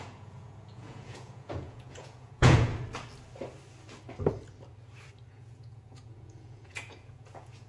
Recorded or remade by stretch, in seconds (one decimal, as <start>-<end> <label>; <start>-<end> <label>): 0.0-2.7 remade; 2.7-5.3 recorded; 5.3-7.7 remade